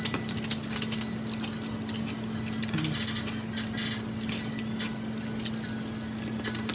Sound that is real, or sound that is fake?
real